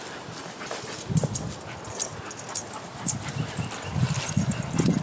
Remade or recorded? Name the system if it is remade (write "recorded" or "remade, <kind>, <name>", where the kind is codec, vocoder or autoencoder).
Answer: recorded